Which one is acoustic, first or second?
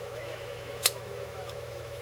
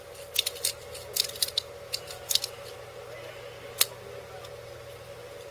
second